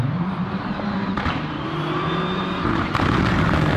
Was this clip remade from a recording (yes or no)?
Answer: yes